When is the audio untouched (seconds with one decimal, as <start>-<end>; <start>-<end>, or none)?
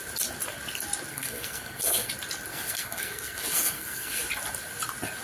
0.0-1.1; 2.1-2.5; 4.2-5.2